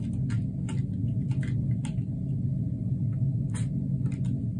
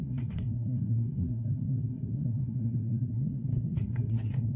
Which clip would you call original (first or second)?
first